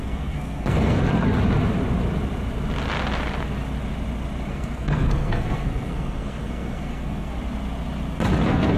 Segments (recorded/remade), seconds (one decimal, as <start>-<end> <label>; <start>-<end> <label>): 0.0-1.0 remade; 1.0-4.5 recorded; 4.5-7.3 remade; 7.3-8.4 recorded; 8.4-8.8 remade